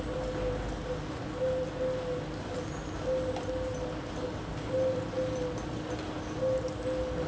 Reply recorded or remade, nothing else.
recorded